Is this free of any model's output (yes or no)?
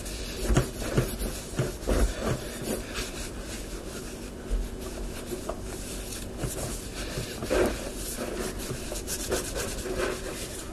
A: yes